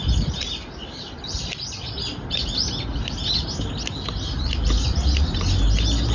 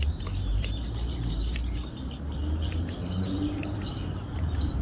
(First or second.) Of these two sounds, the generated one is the second